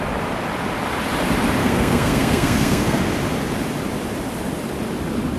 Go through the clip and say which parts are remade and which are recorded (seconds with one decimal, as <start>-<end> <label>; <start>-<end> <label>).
0.0-1.6 recorded; 1.6-3.0 remade; 3.0-5.4 recorded